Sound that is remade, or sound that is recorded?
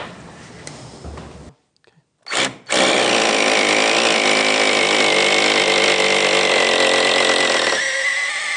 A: recorded